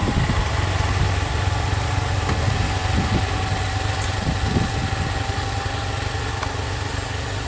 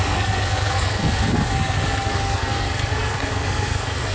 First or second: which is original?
first